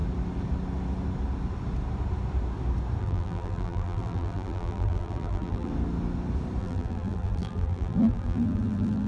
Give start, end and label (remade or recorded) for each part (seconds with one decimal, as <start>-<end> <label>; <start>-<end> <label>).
0.0-3.0 recorded; 3.0-5.7 remade; 5.7-6.6 recorded; 6.6-9.1 remade